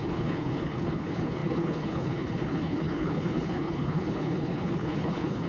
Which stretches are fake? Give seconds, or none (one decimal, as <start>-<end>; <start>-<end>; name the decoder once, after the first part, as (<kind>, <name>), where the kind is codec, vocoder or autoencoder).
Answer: 0.0-5.5 (codec, HILCodec)